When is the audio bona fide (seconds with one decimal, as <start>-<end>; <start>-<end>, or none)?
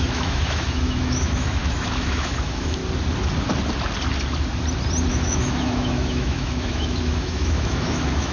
2.8-5.1